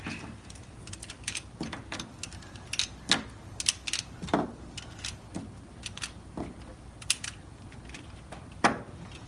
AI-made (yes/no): no